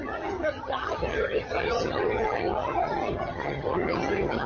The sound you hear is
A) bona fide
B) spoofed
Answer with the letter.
B